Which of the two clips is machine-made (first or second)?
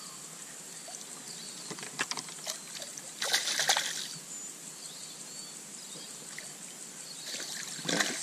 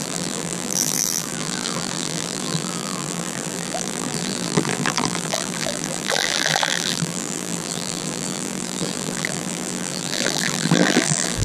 second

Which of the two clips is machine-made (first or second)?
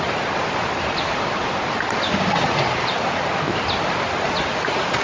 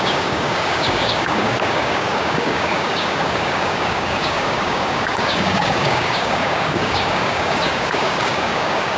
second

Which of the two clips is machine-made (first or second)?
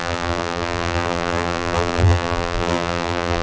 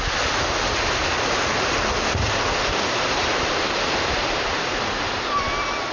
first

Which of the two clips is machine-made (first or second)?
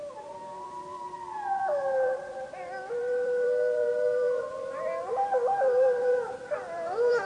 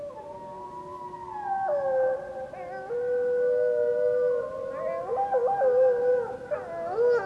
first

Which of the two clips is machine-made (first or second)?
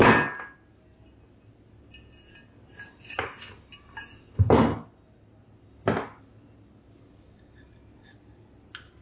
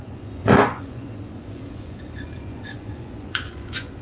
second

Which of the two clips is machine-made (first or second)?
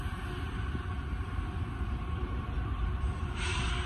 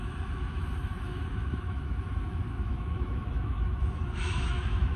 second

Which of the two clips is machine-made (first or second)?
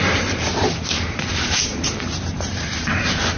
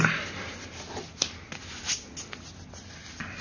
first